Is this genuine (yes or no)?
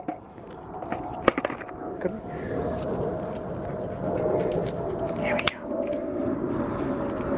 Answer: yes